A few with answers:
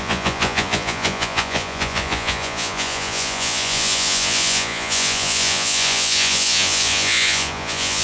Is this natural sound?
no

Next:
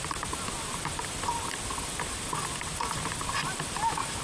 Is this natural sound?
yes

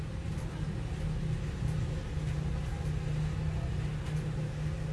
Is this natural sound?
yes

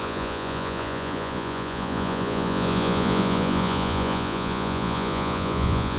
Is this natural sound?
no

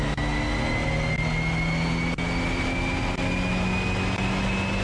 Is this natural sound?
yes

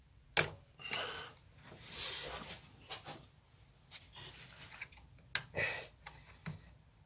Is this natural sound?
yes